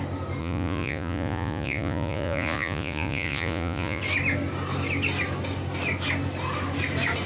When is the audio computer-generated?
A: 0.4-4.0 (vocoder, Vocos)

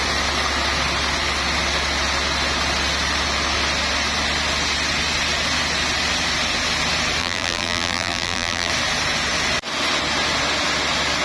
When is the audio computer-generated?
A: 7.2-8.7 (vocoder, BigVGAN v2)

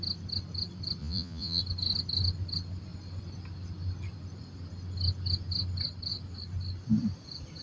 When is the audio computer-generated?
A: 1.0-1.6 (vocoder, Vocos)

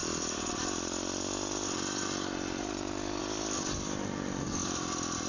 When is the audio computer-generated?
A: none

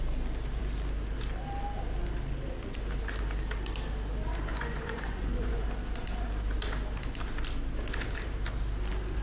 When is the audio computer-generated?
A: 4.5-5.6 (vocoder, Vocos)

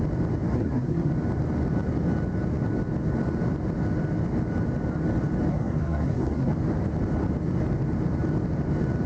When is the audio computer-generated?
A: 0.5-1.1 (codec, SNAC); 5.5-6.5